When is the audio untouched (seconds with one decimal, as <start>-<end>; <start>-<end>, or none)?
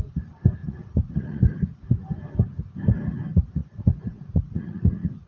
0.0-0.6; 1.4-3.6